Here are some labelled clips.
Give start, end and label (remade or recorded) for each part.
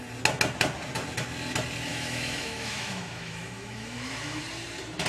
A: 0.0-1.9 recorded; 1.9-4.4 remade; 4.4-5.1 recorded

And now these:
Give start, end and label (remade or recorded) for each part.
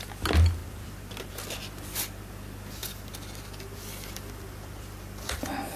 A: 0.0-5.8 recorded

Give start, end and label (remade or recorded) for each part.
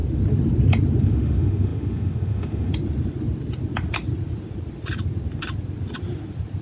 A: 0.0-1.0 recorded; 1.0-2.7 remade; 2.7-6.6 recorded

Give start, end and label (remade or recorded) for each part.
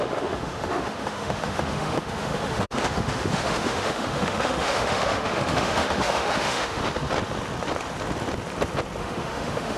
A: 0.0-6.8 remade; 6.8-9.0 recorded; 9.0-9.8 remade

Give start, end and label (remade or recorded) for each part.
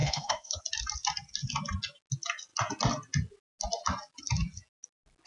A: 0.0-0.6 remade; 0.6-5.3 recorded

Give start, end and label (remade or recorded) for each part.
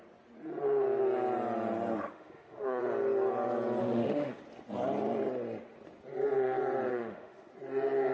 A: 0.0-2.1 recorded; 2.1-2.8 remade; 2.8-3.8 recorded; 3.8-4.4 remade; 4.4-6.9 recorded; 6.9-7.5 remade; 7.5-8.1 recorded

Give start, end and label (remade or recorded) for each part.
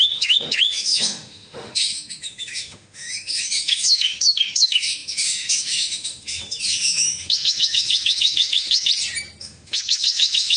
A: 0.0-8.9 remade; 8.9-9.4 recorded; 9.4-10.6 remade